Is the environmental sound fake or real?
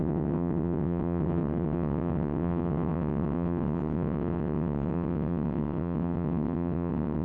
fake